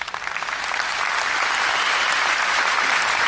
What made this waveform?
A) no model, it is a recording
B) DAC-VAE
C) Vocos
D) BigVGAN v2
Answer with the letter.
A